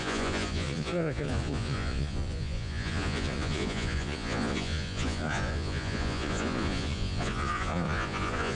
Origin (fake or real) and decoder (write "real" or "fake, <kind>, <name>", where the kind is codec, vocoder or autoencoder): fake, vocoder, Vocos